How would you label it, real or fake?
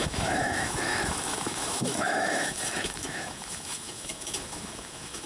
fake